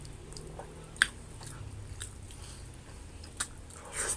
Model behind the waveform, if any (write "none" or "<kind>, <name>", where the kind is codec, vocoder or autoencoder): none